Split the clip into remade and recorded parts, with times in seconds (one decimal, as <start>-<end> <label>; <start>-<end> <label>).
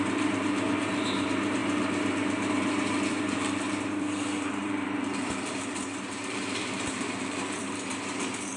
0.0-1.6 remade; 1.6-3.1 recorded; 3.1-8.6 remade